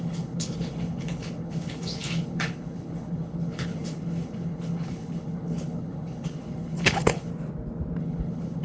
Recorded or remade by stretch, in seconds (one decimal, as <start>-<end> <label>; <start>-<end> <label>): 0.0-7.3 remade; 7.3-8.0 recorded; 8.0-8.6 remade